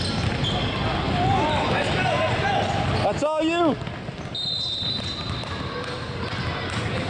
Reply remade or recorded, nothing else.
recorded